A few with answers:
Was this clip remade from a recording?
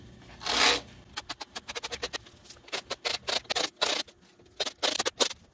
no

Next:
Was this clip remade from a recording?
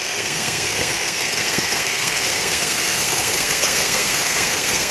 yes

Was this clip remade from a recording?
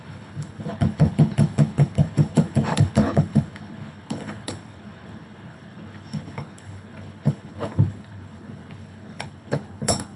yes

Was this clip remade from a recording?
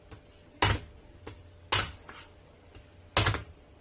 no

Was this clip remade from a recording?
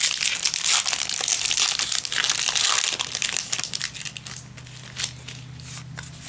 no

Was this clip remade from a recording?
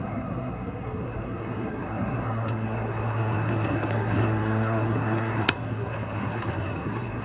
yes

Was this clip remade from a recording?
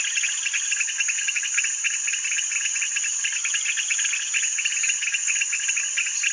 no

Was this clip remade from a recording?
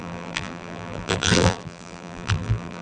yes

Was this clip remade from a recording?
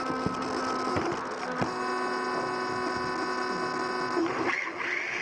no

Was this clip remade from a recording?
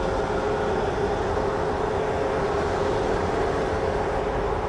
no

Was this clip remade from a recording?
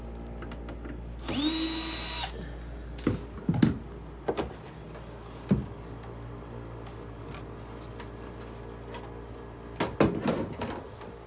no